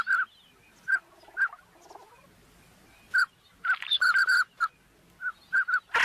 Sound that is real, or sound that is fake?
real